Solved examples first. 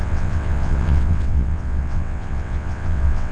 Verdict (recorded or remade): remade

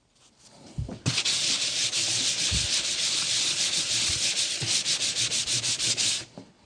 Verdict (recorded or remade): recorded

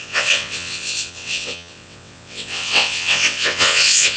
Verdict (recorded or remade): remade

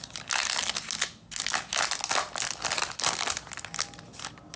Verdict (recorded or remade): recorded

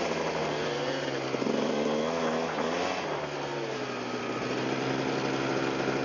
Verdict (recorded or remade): recorded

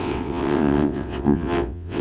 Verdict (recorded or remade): remade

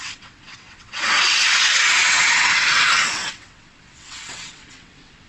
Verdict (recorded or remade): remade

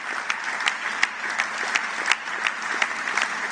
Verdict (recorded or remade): recorded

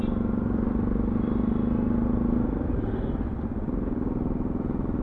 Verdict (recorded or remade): recorded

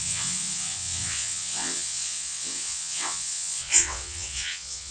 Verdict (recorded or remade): remade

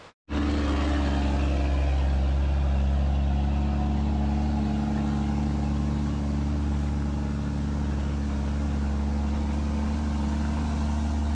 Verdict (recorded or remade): recorded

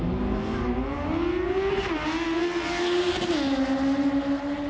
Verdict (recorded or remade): recorded